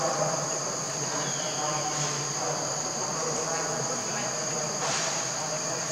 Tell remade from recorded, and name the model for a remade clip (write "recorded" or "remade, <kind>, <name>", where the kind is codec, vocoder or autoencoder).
remade, vocoder, BigVGAN v2